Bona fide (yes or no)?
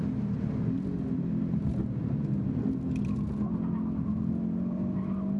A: yes